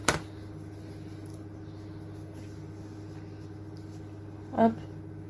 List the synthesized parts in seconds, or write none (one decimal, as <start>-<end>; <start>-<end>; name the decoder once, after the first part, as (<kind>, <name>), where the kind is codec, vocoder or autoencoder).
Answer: none